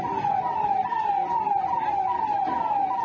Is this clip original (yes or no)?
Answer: yes